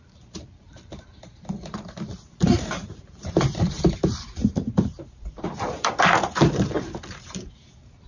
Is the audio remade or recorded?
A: remade